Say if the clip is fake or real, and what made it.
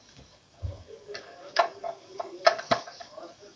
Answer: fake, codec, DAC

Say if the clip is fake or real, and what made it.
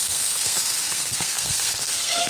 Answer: fake, codec, SNAC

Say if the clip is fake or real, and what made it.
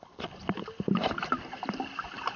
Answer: real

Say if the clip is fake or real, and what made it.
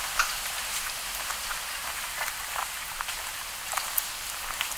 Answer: real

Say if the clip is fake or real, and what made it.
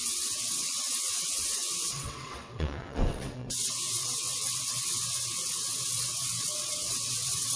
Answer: fake, vocoder, WaveNeXt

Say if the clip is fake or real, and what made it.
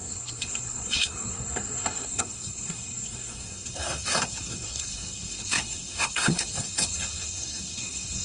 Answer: fake, codec, SNAC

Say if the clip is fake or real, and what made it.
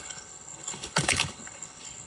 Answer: fake, codec, HILCodec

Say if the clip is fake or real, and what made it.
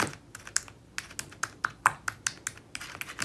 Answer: real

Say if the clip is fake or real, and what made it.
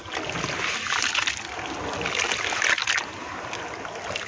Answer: real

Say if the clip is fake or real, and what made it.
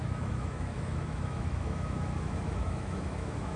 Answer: fake, autoencoder, DAC-VAE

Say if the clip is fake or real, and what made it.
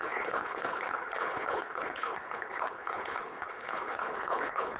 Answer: fake, codec, HILCodec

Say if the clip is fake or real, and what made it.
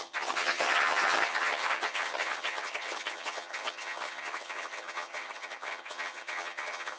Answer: fake, vocoder, HiFi-GAN